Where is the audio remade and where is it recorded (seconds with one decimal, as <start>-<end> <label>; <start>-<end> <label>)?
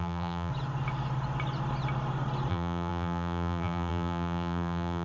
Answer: 0.0-0.5 remade; 0.5-2.5 recorded; 2.5-5.0 remade